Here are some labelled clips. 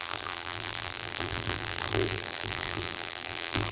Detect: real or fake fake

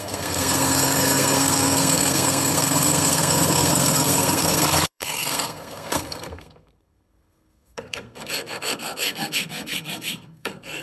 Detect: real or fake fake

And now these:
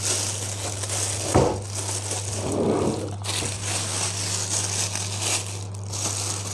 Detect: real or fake real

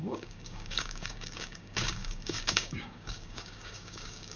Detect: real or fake fake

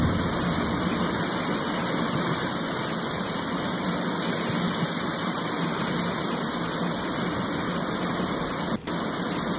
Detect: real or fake real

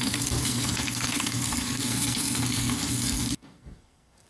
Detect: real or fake fake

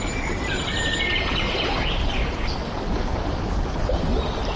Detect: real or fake real